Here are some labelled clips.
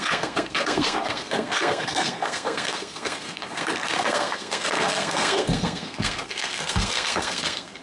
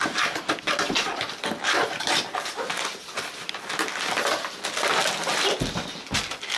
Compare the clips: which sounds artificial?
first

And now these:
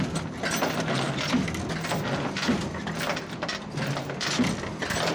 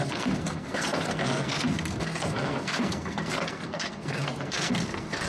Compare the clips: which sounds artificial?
second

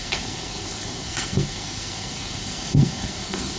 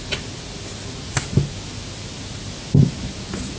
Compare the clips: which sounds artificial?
first